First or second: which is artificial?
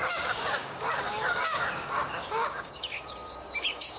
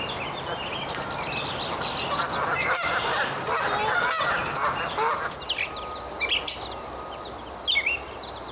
first